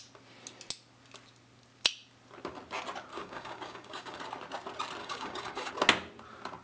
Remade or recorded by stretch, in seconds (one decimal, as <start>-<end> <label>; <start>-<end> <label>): 0.0-3.1 recorded; 3.1-4.2 remade; 4.2-5.0 recorded; 5.0-5.7 remade; 5.7-6.6 recorded